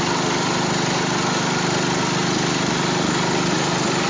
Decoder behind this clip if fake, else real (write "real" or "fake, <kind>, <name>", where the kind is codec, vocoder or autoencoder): real